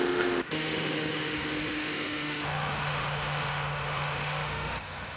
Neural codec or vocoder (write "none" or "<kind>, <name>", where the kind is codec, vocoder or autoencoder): autoencoder, DAC-VAE